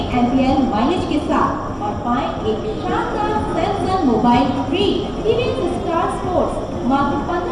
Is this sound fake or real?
real